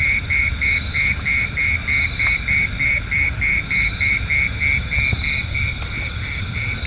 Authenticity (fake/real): real